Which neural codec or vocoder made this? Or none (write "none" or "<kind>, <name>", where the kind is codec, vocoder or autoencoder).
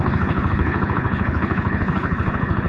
codec, HILCodec